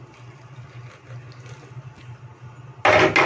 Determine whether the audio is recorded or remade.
recorded